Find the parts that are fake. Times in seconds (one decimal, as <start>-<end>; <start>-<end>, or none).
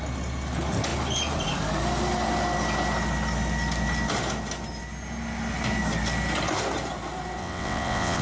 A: 7.4-8.2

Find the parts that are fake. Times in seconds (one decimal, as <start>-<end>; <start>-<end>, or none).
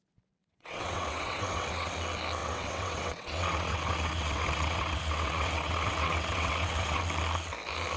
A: 0.4-1.9; 2.4-7.0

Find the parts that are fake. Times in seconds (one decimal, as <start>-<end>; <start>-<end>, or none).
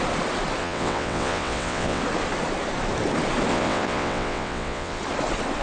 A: 0.6-2.0; 3.5-5.0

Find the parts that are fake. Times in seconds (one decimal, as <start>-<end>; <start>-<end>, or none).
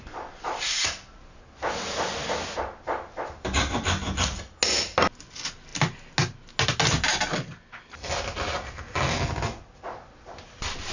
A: none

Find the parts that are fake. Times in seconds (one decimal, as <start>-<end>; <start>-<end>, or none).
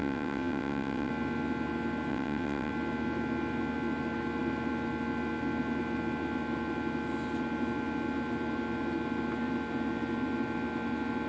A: 0.0-1.1; 2.1-2.7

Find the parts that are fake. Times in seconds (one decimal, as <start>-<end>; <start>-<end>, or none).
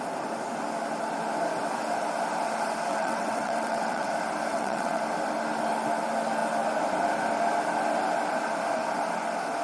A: 2.9-4.1; 4.5-5.0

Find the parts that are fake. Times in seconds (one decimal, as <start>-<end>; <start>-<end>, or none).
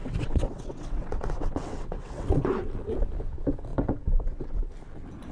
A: 0.0-2.5; 3.7-4.6